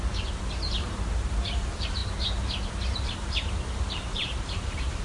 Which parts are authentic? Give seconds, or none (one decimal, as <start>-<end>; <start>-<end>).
2.0-3.0